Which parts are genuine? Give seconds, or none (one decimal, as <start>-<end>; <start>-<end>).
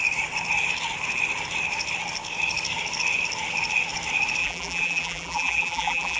0.0-4.4